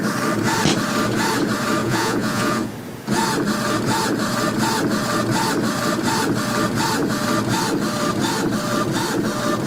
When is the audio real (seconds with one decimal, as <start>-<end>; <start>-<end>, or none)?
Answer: 0.0-1.8; 2.7-9.7